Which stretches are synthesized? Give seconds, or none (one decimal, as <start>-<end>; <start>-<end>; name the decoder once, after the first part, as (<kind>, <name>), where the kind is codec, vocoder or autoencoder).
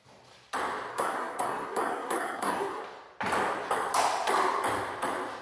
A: 0.9-2.8 (codec, SNAC)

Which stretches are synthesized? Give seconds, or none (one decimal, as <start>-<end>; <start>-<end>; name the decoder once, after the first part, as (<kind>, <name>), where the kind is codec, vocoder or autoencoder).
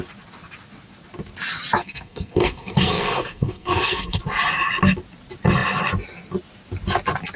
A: 1.8-4.2 (codec, SNAC)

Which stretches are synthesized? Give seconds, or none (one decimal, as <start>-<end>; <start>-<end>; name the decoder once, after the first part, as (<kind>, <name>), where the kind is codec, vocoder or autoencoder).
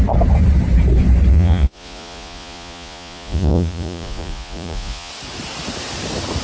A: 1.3-5.1 (vocoder, Vocos)